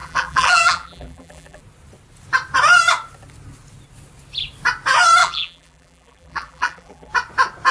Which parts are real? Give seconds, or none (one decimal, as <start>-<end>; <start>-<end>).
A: 1.6-5.2; 7.1-7.7